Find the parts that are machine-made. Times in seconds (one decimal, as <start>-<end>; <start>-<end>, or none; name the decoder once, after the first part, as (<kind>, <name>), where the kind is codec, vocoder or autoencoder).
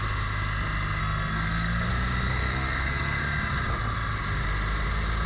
1.0-1.9 (codec, SNAC); 2.4-3.2